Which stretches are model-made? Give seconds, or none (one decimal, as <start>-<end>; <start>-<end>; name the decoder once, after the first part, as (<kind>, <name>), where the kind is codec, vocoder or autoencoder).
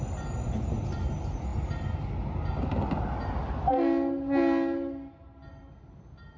none